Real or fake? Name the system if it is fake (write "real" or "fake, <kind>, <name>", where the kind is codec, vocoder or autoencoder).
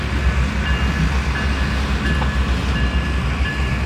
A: real